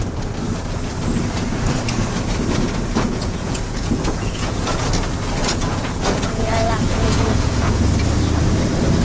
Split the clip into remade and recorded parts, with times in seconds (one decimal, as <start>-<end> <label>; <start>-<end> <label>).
0.0-2.9 recorded; 2.9-4.8 remade; 4.8-5.4 recorded; 5.4-7.8 remade; 7.8-9.0 recorded